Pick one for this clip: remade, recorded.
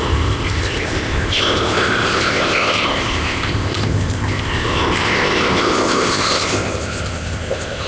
remade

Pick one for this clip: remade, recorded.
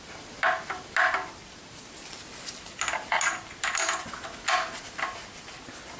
recorded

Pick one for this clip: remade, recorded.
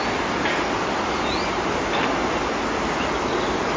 recorded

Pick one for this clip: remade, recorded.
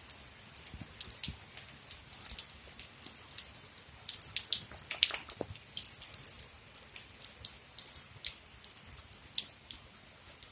recorded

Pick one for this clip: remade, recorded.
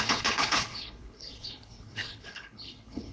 remade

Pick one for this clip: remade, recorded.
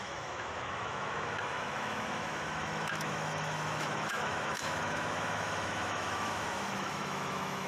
remade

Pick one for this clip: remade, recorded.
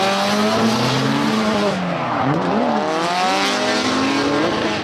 recorded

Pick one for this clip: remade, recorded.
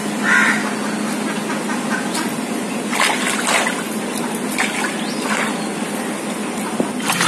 recorded